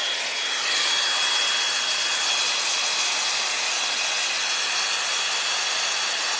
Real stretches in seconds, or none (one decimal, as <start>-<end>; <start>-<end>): 0.0-6.4